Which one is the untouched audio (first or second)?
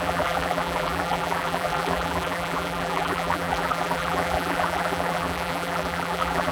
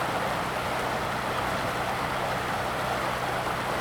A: second